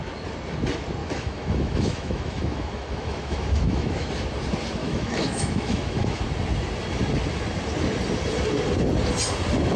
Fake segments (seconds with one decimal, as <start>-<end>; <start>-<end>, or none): 1.0-4.1; 4.8-6.2